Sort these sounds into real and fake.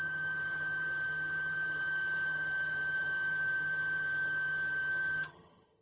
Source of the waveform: fake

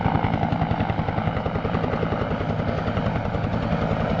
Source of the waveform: real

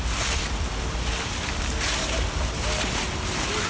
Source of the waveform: real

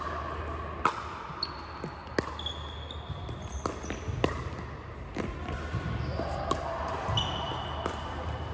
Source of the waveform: real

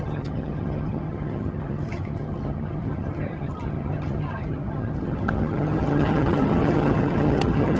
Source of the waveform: fake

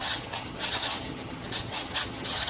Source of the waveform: fake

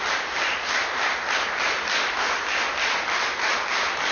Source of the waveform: real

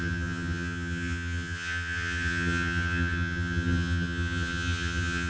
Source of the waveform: fake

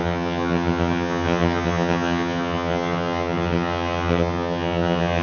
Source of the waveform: fake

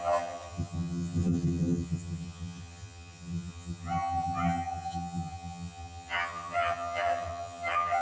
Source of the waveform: fake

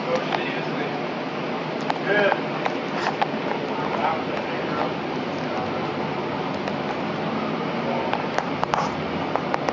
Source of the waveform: real